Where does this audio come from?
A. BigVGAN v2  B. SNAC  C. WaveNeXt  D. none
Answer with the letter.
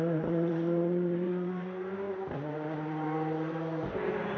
A